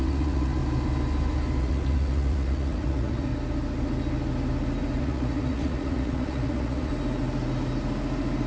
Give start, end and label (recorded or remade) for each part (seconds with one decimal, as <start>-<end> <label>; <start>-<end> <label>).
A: 0.0-0.6 remade; 0.6-1.6 recorded; 1.6-3.3 remade; 3.3-5.0 recorded; 5.0-6.9 remade; 6.9-8.5 recorded